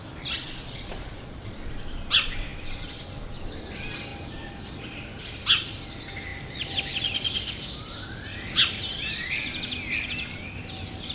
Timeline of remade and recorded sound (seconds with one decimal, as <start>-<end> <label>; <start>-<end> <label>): 0.0-0.4 recorded; 0.4-1.5 remade; 1.5-11.1 recorded